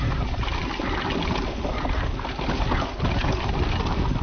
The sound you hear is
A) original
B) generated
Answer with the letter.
A